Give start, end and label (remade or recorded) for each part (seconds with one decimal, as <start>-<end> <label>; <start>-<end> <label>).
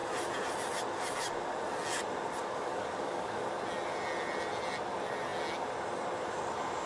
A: 0.0-2.4 recorded; 2.4-3.5 remade; 3.5-6.9 recorded